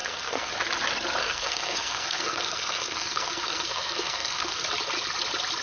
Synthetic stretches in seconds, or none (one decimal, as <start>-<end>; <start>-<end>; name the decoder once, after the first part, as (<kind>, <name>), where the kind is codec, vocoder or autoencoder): 0.0-0.5 (codec, SNAC); 1.2-4.6